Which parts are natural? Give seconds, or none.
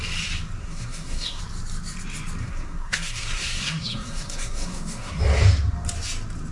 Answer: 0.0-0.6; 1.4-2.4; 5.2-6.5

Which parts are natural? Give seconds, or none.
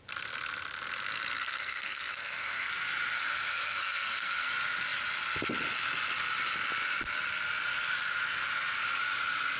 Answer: 0.0-1.4; 2.7-3.1; 4.5-9.6